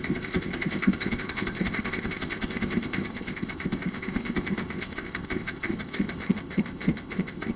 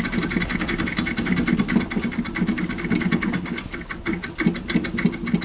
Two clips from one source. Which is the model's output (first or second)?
first